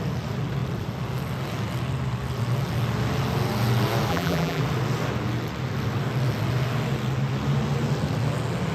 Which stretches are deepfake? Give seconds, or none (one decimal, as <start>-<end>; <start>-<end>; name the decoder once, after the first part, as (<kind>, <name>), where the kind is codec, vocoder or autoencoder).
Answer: 4.1-4.6 (vocoder, BigVGAN v2)

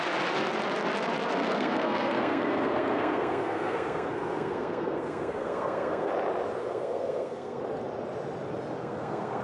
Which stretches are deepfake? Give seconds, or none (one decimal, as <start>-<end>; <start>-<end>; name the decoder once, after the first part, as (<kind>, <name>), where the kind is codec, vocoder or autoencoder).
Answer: 1.3-6.1 (codec, SNAC); 6.6-7.6; 8.8-9.4

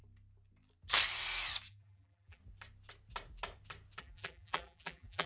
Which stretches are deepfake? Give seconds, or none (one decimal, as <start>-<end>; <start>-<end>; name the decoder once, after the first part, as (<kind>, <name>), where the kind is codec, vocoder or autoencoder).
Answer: 1.7-2.4 (vocoder, BigVGAN v2); 4.0-5.3

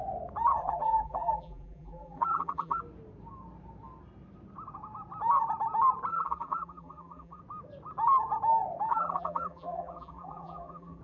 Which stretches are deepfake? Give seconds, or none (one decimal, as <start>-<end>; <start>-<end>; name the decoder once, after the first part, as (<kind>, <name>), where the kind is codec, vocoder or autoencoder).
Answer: 0.6-2.8 (vocoder, BigVGAN v2); 6.1-7.4; 8.9-11.0

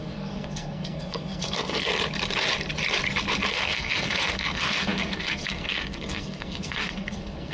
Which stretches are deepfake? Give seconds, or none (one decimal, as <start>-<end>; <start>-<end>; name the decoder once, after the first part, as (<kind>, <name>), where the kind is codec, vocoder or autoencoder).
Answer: 0.0-1.9 (codec, SNAC); 3.5-7.5

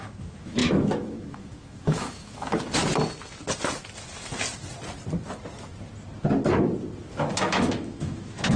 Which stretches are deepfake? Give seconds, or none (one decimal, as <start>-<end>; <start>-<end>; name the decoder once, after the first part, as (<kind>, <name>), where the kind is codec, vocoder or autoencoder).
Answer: 0.0-2.8 (autoencoder, DAC-VAE); 7.4-8.6